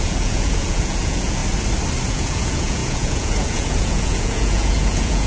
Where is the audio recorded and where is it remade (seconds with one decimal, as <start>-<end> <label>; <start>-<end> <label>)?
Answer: 0.0-1.4 remade; 1.4-2.1 recorded; 2.1-5.3 remade